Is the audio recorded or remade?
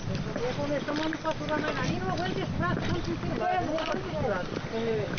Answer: recorded